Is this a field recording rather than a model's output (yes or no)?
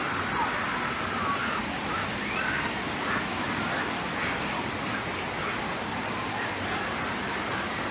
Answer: yes